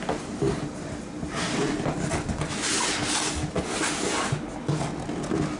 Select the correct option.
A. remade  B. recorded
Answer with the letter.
B